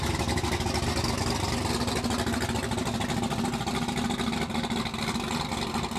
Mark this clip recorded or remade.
recorded